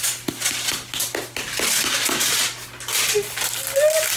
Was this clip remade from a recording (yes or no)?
no